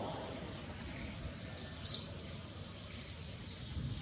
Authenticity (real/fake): real